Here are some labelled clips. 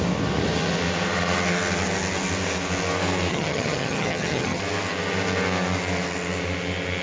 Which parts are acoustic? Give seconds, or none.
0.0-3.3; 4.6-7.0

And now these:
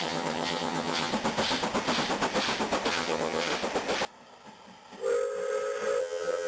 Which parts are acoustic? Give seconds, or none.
1.1-2.9; 3.5-6.0

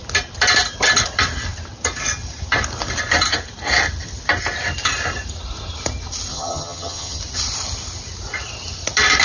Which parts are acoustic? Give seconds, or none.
0.0-6.3; 7.2-9.2

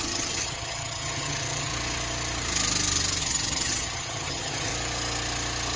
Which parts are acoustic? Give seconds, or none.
1.7-3.2; 4.7-5.8

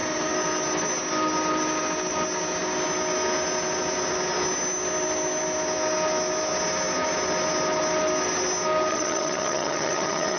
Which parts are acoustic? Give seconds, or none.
0.0-8.9

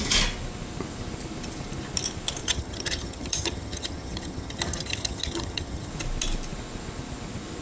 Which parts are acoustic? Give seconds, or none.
0.0-2.4; 5.9-7.6